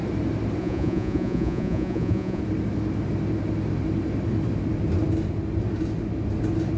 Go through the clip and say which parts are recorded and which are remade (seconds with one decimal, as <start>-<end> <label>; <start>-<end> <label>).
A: 0.0-0.6 recorded; 0.6-2.4 remade; 2.4-6.8 recorded